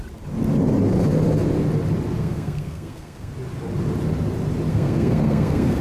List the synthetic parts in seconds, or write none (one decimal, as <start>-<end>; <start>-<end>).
2.2-3.3; 4.7-5.8